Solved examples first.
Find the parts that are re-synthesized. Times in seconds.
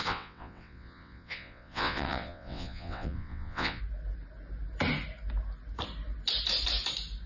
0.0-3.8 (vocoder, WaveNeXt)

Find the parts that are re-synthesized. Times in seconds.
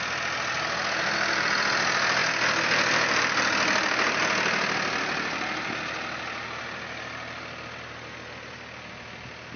none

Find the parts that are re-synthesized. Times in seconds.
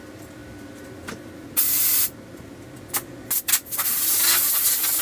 none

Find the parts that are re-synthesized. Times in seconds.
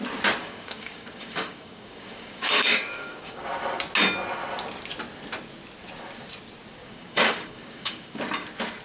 0.4-3.5 (codec, DAC); 6.8-8.2